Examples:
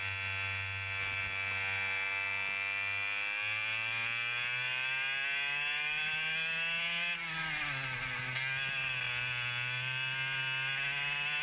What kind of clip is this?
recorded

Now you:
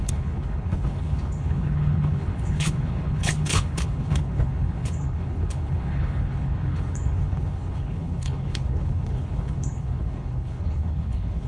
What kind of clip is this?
remade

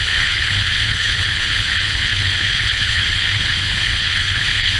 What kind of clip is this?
remade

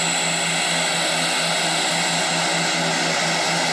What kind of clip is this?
recorded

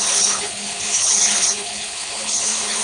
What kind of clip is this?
remade